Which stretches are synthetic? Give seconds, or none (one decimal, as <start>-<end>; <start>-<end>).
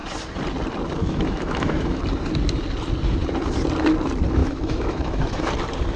1.0-2.0; 4.4-5.5